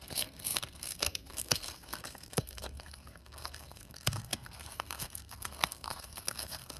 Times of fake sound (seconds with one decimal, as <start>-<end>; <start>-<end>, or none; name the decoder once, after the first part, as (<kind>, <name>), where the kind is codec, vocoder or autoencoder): 0.0-6.8 (codec, SNAC)